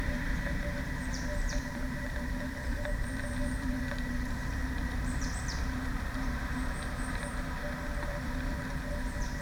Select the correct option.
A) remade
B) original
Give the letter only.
A